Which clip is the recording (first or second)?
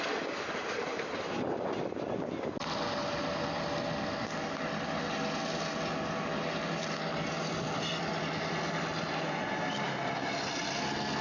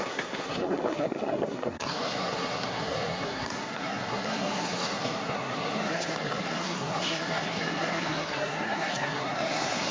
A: first